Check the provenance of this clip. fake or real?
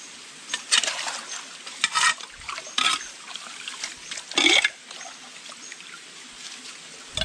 real